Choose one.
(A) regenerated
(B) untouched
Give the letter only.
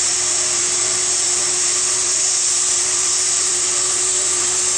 A